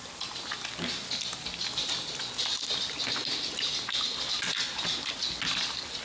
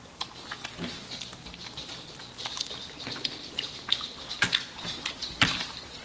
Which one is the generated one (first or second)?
second